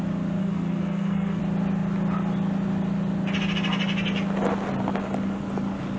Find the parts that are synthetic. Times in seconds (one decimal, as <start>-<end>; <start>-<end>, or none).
0.4-1.4